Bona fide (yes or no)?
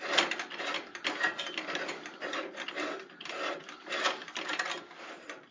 yes